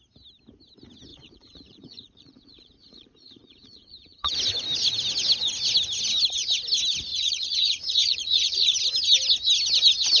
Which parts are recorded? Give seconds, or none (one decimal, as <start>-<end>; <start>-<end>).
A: 0.0-1.1; 4.3-7.1; 8.8-10.2